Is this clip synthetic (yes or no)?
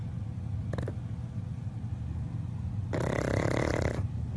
no